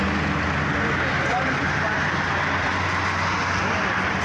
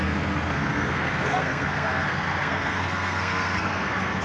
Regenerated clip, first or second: second